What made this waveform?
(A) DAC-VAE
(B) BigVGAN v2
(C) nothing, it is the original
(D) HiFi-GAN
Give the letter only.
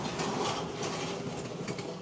C